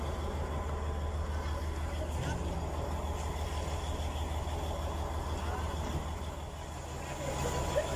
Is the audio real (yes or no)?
yes